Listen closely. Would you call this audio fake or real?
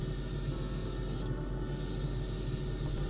real